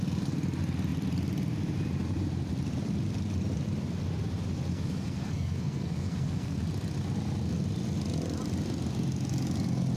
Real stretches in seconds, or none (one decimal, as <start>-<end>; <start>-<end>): 0.0-4.7; 6.6-10.0